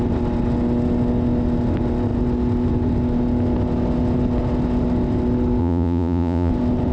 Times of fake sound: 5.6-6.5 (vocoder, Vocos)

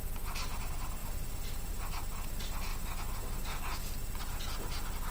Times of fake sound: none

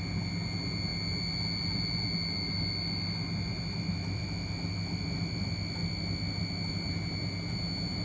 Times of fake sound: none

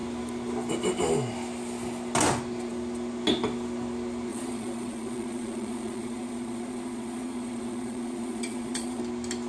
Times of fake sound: 4.3-9.0 (vocoder, Vocos)

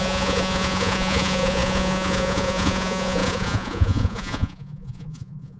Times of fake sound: 0.0-5.6 (vocoder, Vocos)

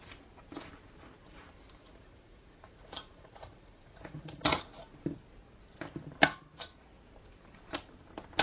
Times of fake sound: 1.8-4.6 (vocoder, Vocos)